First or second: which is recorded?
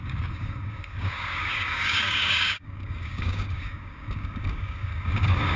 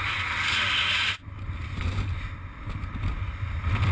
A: second